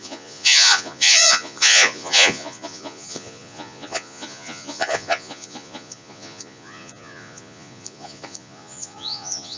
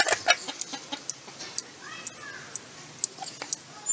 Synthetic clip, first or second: first